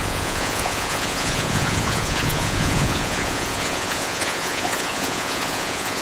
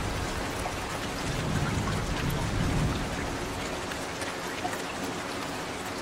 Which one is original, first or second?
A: second